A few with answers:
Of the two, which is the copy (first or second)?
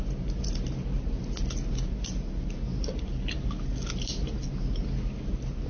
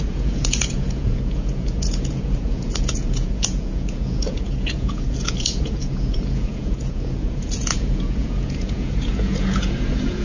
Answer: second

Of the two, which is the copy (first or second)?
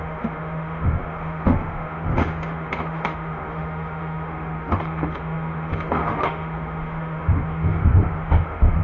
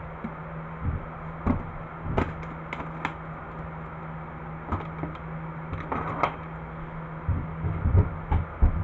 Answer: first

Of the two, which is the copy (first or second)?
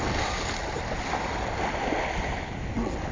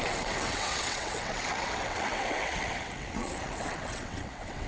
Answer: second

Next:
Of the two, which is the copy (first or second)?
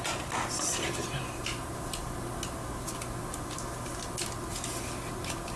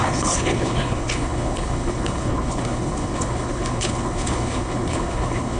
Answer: second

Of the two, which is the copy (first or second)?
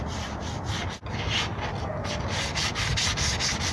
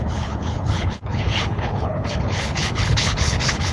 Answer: second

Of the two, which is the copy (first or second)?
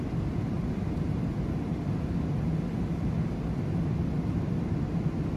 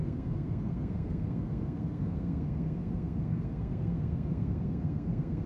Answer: second